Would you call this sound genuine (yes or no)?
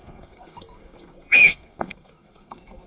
no